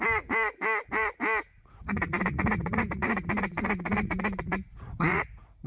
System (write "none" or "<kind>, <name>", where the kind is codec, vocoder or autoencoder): vocoder, Vocos